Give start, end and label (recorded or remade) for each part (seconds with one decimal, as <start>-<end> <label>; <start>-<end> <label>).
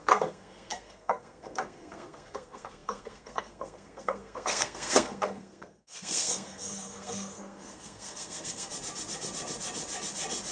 0.0-8.7 remade; 8.7-10.5 recorded